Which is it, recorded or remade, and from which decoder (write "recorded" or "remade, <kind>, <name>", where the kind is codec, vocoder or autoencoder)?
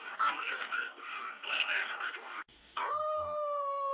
remade, codec, DAC